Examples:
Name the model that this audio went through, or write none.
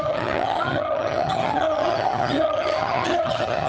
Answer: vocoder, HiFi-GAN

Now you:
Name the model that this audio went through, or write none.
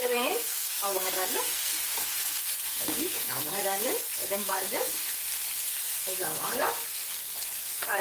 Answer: codec, SNAC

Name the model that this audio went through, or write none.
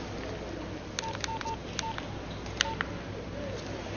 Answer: none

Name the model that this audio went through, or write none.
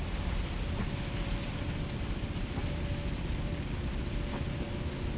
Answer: vocoder, BigVGAN v2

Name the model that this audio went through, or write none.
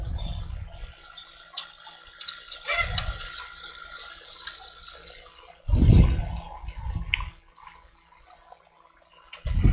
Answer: none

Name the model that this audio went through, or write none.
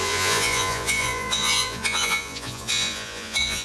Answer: vocoder, Vocos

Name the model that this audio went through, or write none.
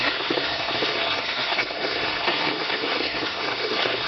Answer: codec, SNAC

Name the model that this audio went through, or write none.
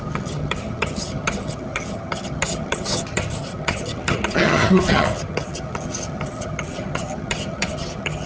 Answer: vocoder, HiFi-GAN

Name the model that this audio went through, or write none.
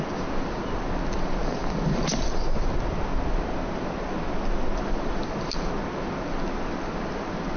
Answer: none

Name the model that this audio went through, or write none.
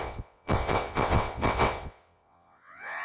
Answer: vocoder, WaveNeXt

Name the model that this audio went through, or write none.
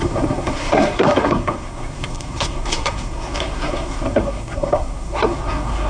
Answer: codec, SNAC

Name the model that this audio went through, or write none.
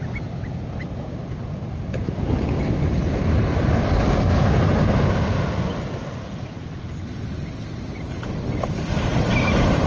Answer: none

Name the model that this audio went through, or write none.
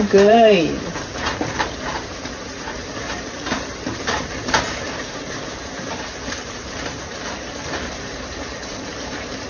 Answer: vocoder, BigVGAN v2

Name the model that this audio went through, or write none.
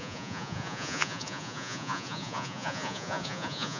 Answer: vocoder, Vocos